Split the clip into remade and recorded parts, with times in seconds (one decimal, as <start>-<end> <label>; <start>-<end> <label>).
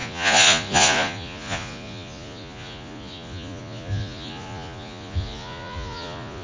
0.0-6.4 remade